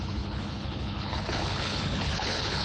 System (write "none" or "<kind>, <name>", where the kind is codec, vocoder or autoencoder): codec, HILCodec